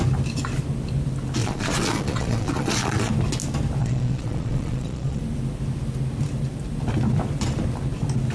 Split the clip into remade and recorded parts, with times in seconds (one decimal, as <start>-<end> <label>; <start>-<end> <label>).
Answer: 0.0-1.4 recorded; 1.4-3.1 remade; 3.1-3.8 recorded; 3.8-5.2 remade; 5.2-8.3 recorded

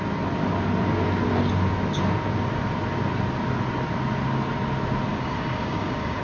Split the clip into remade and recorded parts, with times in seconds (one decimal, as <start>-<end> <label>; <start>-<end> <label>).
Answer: 0.0-5.1 recorded; 5.1-6.2 remade

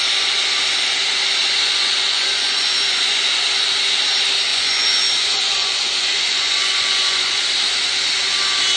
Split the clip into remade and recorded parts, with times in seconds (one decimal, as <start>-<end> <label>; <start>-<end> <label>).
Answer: 0.0-1.4 recorded; 1.4-3.3 remade; 3.3-4.5 recorded; 4.5-7.4 remade; 7.4-8.8 recorded

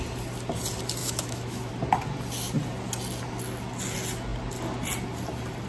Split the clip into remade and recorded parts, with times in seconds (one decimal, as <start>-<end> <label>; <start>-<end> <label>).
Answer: 0.0-1.0 recorded; 1.0-1.7 remade; 1.7-5.7 recorded

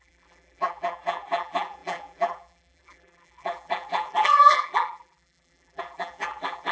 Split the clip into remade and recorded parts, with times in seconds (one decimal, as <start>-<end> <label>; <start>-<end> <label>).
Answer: 0.0-6.7 remade

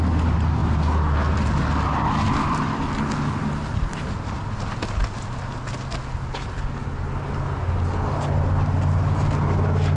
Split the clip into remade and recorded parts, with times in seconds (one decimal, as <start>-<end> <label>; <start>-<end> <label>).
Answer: 0.0-10.0 recorded

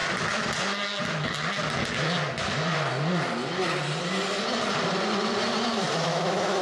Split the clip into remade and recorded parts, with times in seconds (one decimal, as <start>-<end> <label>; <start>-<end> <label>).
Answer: 0.0-5.7 recorded; 5.7-6.6 remade

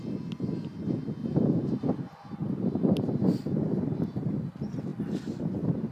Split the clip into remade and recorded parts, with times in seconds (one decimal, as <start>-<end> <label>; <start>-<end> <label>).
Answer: 0.0-1.2 recorded; 1.2-1.8 remade; 1.8-2.4 recorded; 2.4-3.4 remade; 3.4-5.9 recorded